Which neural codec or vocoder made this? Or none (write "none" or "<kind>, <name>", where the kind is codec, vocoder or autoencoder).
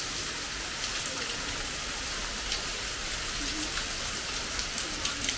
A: none